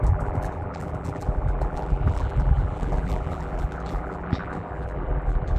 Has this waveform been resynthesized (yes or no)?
yes